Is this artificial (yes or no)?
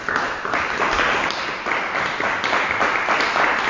no